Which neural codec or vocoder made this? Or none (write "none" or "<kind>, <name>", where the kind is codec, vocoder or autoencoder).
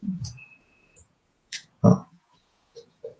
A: vocoder, Vocos